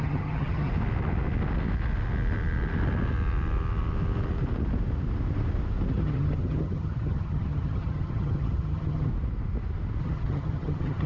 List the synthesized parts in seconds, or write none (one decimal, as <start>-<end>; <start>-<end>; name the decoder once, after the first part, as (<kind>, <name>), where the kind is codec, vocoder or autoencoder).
0.0-0.7 (vocoder, HiFi-GAN); 5.9-9.1; 10.0-11.1